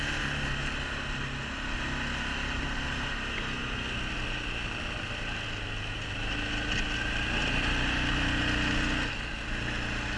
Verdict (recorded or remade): recorded